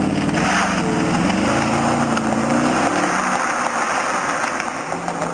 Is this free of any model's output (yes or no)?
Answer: yes